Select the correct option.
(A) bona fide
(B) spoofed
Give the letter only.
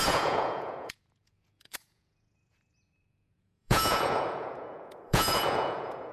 B